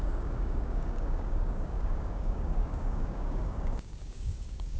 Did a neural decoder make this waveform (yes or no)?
yes